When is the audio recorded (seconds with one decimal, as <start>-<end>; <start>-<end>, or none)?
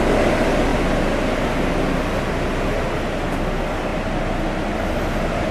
0.0-5.5